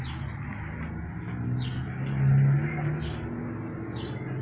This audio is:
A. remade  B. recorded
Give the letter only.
B